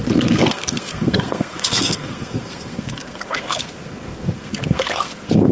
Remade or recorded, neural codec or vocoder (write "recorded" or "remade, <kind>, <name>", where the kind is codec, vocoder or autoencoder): remade, codec, SNAC